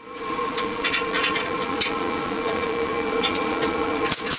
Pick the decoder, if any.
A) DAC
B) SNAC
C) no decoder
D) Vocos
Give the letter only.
D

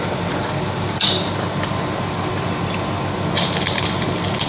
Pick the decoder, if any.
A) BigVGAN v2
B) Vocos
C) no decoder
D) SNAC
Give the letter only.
C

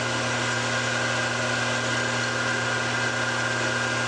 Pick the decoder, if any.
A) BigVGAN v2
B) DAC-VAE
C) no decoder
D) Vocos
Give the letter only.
C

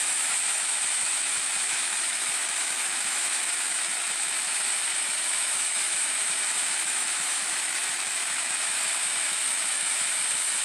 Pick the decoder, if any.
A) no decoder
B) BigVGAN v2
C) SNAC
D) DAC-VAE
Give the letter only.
D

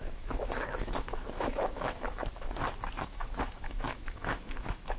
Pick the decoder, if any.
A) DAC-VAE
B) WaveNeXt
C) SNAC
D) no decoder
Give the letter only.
A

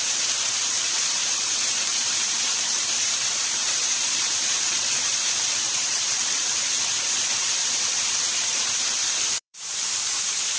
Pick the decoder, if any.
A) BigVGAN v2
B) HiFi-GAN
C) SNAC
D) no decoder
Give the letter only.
A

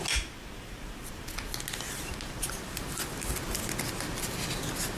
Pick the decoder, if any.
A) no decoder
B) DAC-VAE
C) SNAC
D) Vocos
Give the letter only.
A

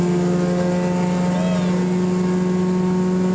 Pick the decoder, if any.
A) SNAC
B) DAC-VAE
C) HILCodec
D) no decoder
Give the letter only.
D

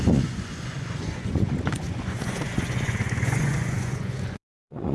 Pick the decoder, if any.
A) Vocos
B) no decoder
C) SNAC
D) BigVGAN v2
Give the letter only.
A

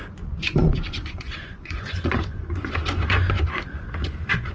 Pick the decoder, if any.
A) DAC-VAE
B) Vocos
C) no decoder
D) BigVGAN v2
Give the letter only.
B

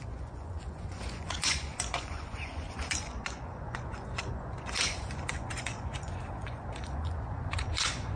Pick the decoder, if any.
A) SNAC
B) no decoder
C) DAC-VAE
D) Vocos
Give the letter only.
D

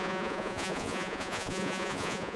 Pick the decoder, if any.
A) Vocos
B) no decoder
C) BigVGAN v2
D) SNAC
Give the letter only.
A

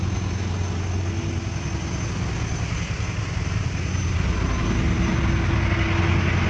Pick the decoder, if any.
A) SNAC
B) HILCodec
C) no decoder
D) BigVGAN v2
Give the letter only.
C